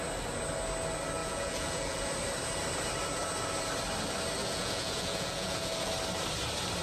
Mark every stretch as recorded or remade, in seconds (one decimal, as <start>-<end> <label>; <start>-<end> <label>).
0.0-1.2 recorded; 1.2-2.1 remade; 2.1-4.4 recorded; 4.4-5.9 remade; 5.9-6.8 recorded